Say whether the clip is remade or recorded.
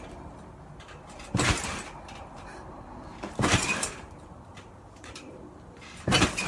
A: recorded